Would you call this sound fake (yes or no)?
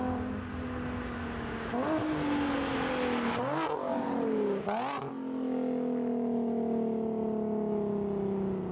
no